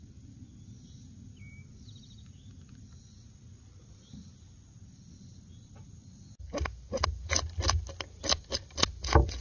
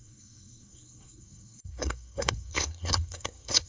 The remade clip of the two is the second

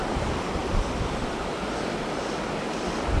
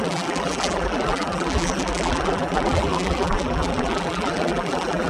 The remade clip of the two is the second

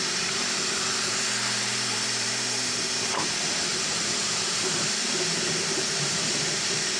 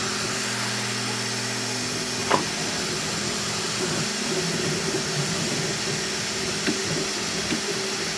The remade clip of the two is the first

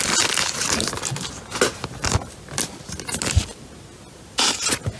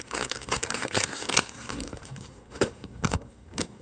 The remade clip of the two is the second